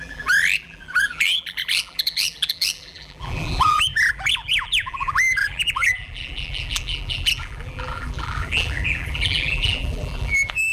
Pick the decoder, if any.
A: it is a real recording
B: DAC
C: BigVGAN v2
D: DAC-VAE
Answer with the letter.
C